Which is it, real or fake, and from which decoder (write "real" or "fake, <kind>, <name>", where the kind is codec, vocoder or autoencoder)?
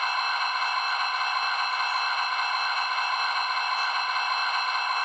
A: real